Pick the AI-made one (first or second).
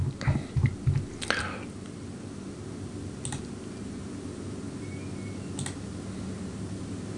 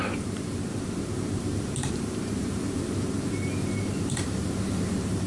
second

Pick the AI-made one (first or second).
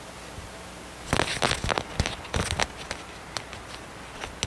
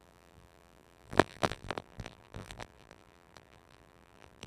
second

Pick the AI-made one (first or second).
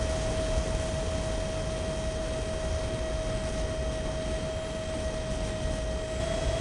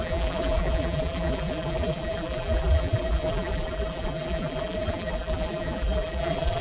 second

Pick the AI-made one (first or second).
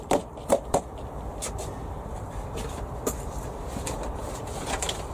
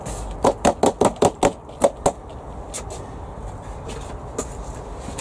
first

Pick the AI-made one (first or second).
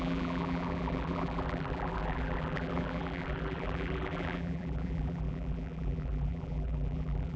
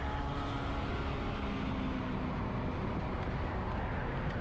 first